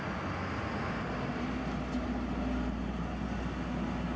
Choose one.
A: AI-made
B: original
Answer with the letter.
B